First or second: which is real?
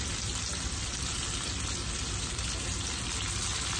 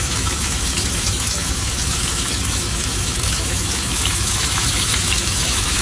first